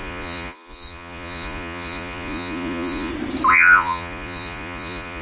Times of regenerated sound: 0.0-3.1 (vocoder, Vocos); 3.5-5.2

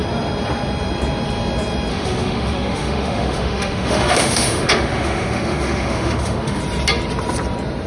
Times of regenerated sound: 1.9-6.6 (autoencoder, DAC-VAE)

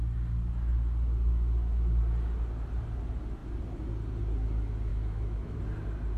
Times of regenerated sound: 4.9-5.6 (autoencoder, DAC-VAE)

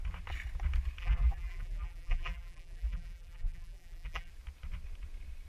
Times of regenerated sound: 1.0-4.3 (vocoder, BigVGAN v2)

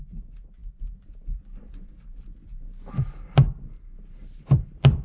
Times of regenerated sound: none

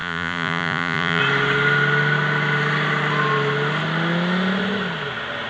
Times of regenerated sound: 0.0-1.2 (vocoder, Vocos)